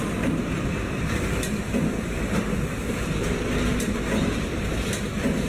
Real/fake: fake